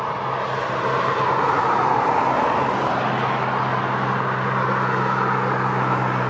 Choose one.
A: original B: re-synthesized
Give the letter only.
A